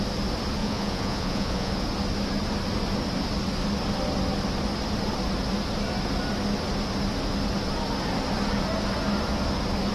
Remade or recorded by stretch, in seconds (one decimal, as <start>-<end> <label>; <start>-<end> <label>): 0.0-0.6 recorded; 0.6-1.7 remade; 1.7-9.9 recorded